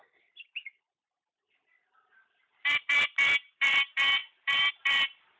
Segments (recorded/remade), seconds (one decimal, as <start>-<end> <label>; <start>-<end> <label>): 0.0-5.4 remade